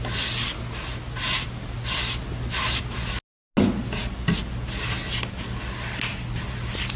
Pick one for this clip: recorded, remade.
recorded